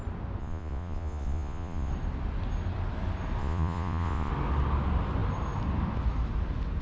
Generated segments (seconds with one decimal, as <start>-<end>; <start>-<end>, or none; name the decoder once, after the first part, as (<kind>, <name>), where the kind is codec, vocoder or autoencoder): 0.4-1.9 (vocoder, Vocos); 3.4-4.3